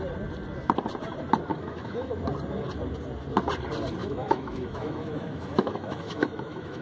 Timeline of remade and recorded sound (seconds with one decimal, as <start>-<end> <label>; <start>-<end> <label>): 0.0-1.5 recorded; 1.5-2.1 remade; 2.1-4.0 recorded; 4.0-6.8 remade